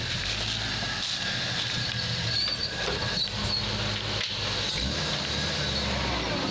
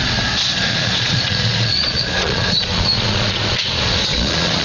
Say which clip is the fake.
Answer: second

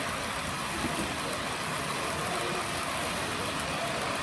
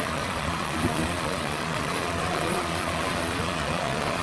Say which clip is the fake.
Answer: second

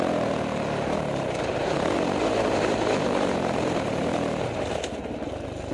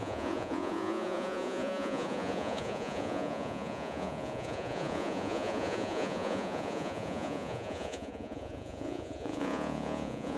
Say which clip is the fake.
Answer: second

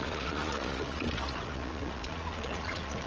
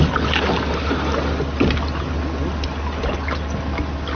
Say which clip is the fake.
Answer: first